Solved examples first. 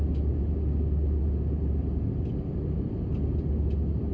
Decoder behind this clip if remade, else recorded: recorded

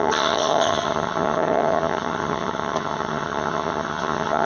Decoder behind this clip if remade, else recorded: remade, vocoder, HiFi-GAN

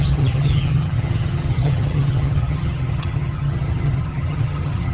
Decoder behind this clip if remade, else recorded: remade, vocoder, HiFi-GAN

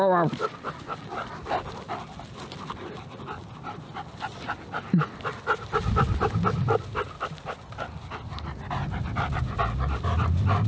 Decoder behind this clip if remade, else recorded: recorded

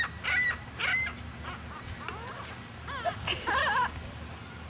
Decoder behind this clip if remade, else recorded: recorded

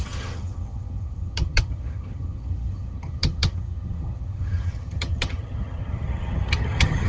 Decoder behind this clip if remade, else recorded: remade, vocoder, HiFi-GAN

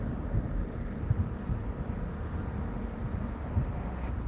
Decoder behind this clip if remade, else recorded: recorded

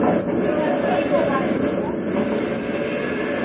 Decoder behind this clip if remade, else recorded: recorded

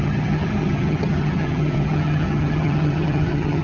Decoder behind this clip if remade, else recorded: remade, vocoder, HiFi-GAN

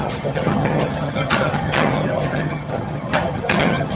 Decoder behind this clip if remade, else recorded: remade, vocoder, HiFi-GAN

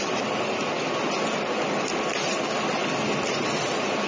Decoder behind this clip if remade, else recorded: recorded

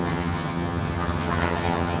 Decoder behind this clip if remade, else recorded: remade, vocoder, HiFi-GAN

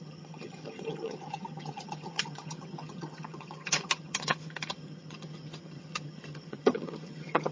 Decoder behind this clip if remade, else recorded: remade, vocoder, HiFi-GAN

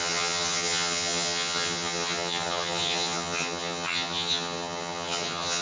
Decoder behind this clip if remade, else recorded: remade, vocoder, HiFi-GAN